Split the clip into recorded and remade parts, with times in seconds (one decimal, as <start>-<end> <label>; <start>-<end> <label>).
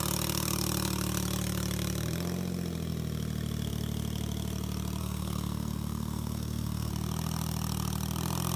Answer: 0.0-5.0 recorded; 5.0-6.9 remade; 6.9-8.6 recorded